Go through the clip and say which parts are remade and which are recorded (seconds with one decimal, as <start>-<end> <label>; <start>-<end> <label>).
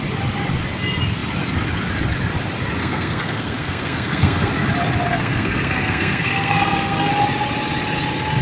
0.0-2.8 recorded; 2.8-4.5 remade; 4.5-5.1 recorded; 5.1-7.1 remade; 7.1-8.4 recorded